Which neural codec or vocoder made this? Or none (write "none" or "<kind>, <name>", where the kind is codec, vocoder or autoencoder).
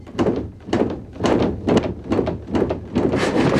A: none